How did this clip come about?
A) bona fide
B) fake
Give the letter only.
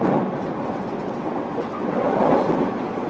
B